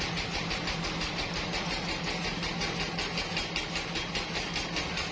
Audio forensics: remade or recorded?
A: recorded